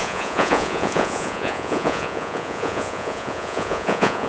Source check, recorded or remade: remade